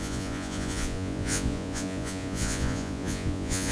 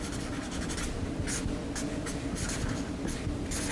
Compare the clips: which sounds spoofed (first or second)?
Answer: first